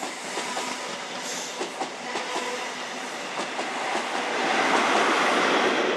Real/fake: real